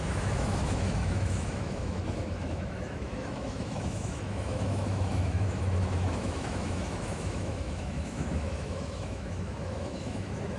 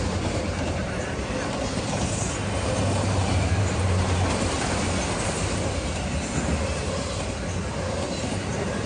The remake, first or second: first